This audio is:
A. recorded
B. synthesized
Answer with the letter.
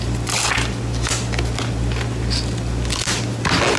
A